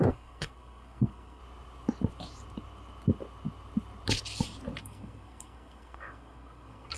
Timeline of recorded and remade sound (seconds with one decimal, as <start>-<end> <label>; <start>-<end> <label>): 0.0-1.4 remade; 1.4-4.8 recorded; 4.8-7.0 remade